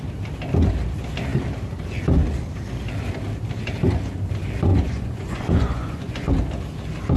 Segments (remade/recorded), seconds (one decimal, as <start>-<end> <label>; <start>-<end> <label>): 0.0-4.7 recorded; 4.7-6.3 remade; 6.3-7.2 recorded